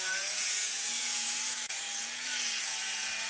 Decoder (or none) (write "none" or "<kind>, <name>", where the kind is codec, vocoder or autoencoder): vocoder, Vocos